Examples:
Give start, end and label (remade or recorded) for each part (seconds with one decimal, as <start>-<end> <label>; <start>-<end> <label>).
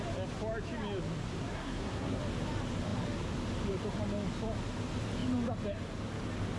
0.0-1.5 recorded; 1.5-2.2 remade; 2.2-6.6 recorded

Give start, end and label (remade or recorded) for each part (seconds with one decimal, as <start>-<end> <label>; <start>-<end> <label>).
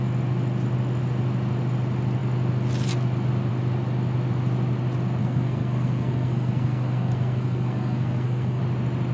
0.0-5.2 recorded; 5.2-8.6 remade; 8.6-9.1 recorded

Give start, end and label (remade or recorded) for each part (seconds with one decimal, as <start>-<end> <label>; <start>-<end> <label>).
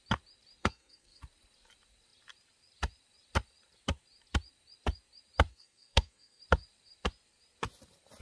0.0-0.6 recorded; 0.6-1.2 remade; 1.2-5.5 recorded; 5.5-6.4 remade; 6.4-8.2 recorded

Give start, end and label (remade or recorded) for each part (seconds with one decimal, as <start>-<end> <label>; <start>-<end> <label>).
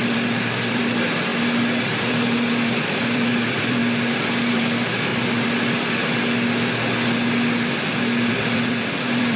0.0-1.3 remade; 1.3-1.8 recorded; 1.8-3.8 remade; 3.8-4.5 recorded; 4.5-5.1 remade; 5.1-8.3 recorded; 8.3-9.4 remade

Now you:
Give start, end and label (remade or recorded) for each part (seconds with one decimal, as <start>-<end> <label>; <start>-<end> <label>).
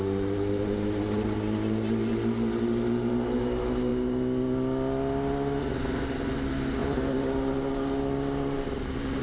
0.0-9.2 recorded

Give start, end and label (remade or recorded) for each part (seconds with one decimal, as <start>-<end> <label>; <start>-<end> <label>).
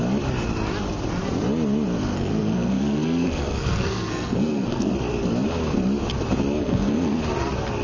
0.0-2.1 recorded; 2.1-4.9 remade; 4.9-6.6 recorded; 6.6-7.2 remade; 7.2-7.8 recorded